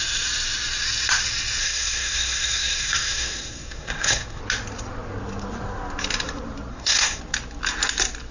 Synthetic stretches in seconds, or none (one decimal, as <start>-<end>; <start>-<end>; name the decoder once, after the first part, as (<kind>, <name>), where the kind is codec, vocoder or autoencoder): 1.6-4.4 (codec, SNAC); 6.7-7.2